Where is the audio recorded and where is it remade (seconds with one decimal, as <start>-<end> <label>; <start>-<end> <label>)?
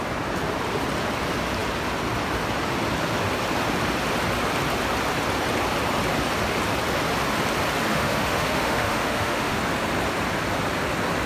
0.0-7.9 recorded; 7.9-9.6 remade; 9.6-11.3 recorded